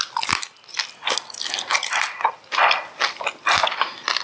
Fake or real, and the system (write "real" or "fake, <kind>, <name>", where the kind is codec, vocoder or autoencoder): real